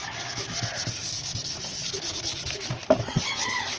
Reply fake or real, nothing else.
real